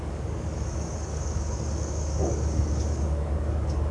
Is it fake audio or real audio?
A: fake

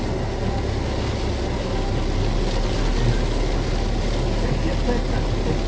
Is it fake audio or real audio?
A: real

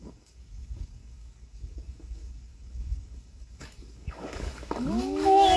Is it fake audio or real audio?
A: fake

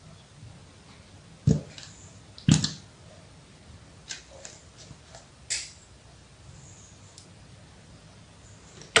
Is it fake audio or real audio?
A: real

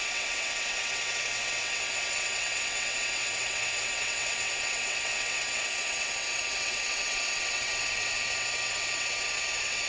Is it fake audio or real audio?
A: fake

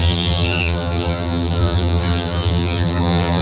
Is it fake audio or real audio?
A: fake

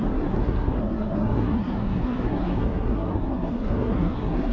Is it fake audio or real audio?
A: fake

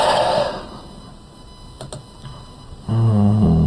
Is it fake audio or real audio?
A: real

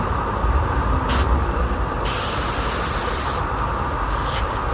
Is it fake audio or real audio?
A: real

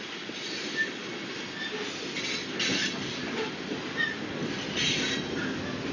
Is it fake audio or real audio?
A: real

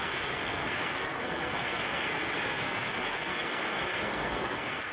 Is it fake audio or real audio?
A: fake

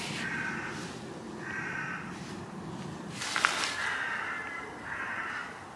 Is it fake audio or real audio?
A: real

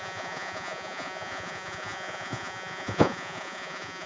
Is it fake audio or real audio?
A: fake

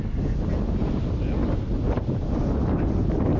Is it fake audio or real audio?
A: real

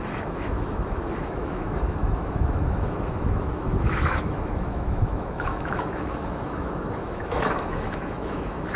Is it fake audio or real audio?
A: fake